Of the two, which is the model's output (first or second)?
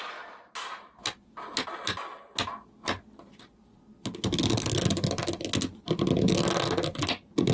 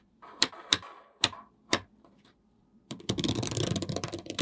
second